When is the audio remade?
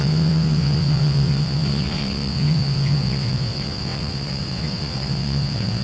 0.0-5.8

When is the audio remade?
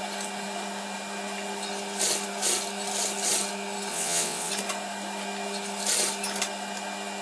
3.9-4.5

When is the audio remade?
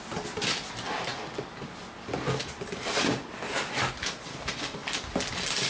none